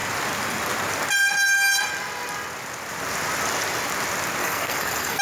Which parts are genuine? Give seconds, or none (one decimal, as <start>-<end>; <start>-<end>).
0.0-4.4